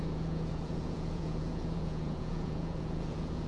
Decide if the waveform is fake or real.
fake